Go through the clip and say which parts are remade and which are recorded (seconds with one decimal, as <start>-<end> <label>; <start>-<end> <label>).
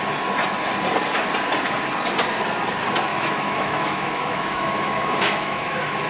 0.0-3.1 recorded; 3.1-6.1 remade